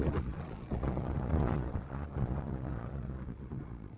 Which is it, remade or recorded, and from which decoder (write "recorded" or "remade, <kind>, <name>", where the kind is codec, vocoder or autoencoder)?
remade, vocoder, Vocos